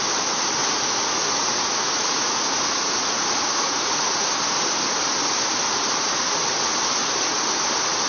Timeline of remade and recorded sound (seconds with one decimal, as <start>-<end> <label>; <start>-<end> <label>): 0.0-0.6 recorded; 0.6-4.3 remade; 4.3-8.1 recorded